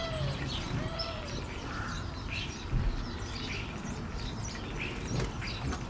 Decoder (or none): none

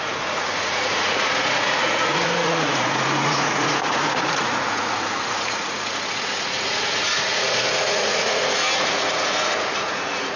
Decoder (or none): vocoder, Vocos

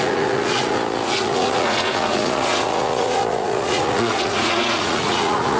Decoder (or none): vocoder, Vocos